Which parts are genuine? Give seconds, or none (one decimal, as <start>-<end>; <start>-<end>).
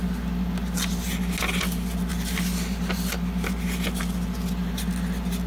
0.0-5.5